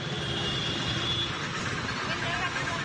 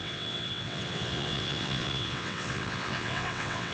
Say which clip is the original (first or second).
first